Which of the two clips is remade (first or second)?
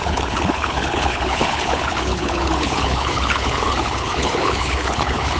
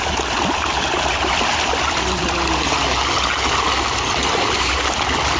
first